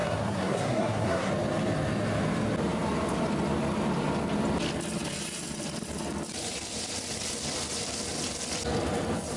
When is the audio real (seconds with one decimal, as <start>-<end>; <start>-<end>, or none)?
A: 1.3-9.4